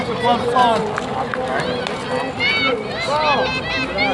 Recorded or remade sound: recorded